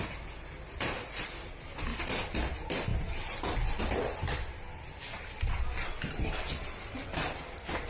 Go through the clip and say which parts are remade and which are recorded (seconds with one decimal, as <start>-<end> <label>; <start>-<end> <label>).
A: 0.0-7.9 recorded

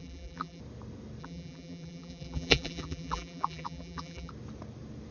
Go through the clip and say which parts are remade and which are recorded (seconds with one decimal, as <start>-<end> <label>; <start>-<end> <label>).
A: 0.0-0.6 remade; 0.6-1.2 recorded; 1.2-4.3 remade; 4.3-5.1 recorded

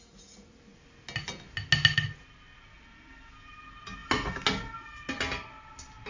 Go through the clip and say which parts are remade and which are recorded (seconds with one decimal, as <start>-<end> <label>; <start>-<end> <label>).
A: 0.0-6.1 recorded